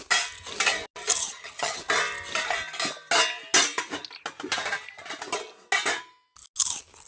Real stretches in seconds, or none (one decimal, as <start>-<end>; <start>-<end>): 0.0-1.2; 1.8-7.1